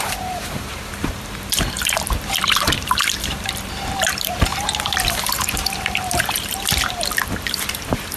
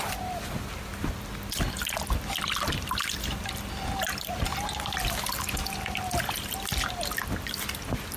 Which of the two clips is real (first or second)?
second